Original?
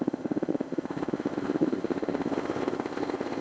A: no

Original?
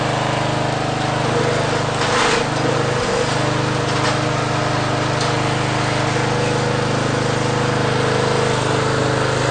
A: yes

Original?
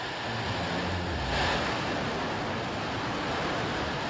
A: yes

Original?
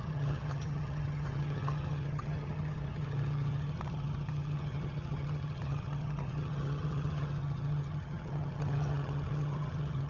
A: no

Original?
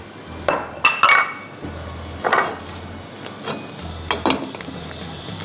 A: yes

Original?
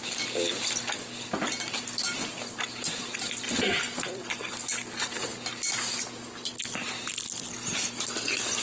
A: yes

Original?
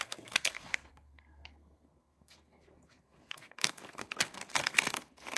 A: no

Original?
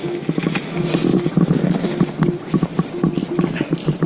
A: yes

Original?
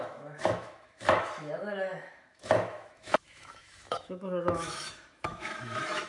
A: no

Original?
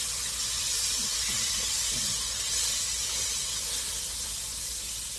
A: no